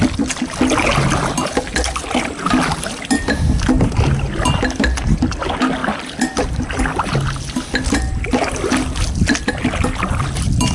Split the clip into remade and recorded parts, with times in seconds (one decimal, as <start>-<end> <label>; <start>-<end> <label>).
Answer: 0.0-10.7 recorded